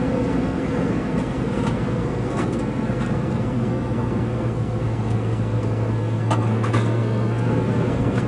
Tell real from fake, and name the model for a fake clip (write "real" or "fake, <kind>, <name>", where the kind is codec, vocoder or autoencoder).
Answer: fake, codec, SNAC